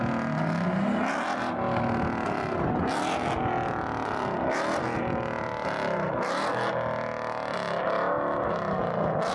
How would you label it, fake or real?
real